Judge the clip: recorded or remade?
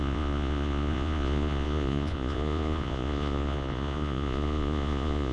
remade